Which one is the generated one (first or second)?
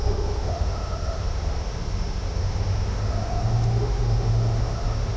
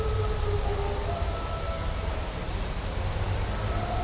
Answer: first